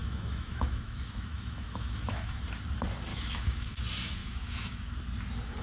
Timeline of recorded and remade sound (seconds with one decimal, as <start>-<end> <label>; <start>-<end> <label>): 0.0-2.4 remade; 2.4-3.1 recorded; 3.1-3.8 remade; 3.8-4.2 recorded; 4.2-4.9 remade; 4.9-5.6 recorded

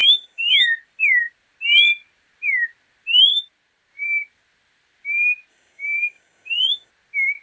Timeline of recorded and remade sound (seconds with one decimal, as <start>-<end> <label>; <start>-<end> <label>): 0.0-0.6 remade; 0.6-5.5 recorded; 5.5-6.9 remade; 6.9-7.4 recorded

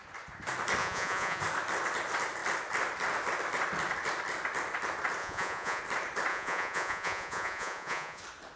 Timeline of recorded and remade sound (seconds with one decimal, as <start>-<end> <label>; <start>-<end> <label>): 0.0-0.8 recorded; 0.8-1.4 remade; 1.4-5.2 recorded; 5.2-5.8 remade; 5.8-6.3 recorded; 6.3-8.2 remade; 8.2-8.6 recorded

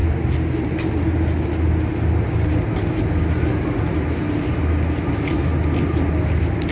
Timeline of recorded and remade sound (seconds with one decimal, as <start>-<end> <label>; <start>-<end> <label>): 0.0-6.7 recorded

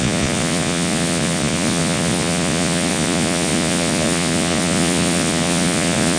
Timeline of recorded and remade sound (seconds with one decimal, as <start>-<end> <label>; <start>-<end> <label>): 0.0-6.2 remade

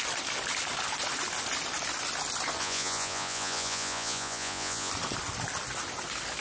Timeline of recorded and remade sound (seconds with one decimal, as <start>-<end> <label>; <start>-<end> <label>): 0.0-2.6 recorded; 2.6-4.9 remade; 4.9-6.4 recorded